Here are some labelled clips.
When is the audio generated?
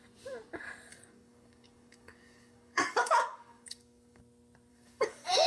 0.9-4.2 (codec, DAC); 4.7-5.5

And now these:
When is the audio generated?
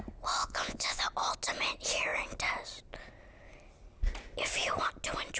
0.4-1.0 (vocoder, Vocos)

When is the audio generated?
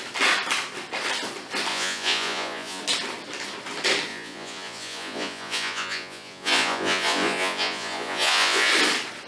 1.7-2.8 (vocoder, Vocos); 4.1-8.7